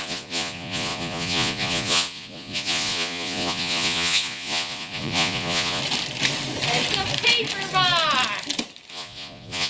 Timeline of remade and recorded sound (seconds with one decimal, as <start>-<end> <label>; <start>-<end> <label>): 0.0-5.8 remade; 5.8-8.9 recorded; 8.9-9.7 remade